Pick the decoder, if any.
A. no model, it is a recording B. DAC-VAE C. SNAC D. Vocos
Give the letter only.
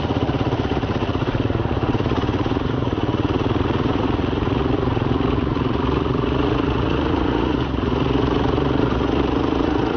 D